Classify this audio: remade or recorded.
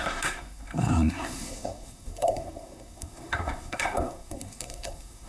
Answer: remade